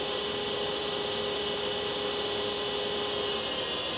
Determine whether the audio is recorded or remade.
recorded